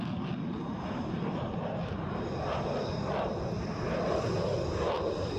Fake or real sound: fake